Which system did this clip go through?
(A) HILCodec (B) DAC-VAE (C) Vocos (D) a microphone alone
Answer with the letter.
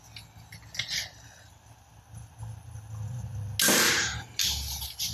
D